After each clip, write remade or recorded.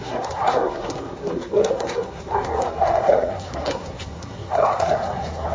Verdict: remade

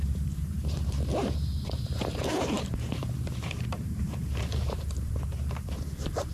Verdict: remade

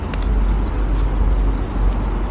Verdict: recorded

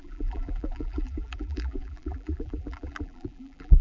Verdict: remade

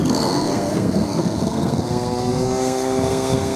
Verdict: remade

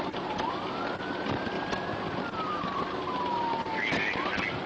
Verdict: recorded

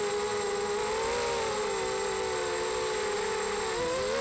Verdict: recorded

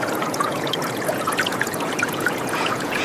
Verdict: remade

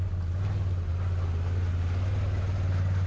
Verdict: recorded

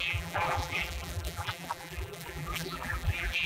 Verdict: remade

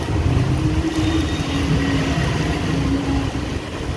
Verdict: recorded